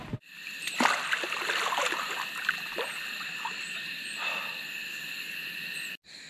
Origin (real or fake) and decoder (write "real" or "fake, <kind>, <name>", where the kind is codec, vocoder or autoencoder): real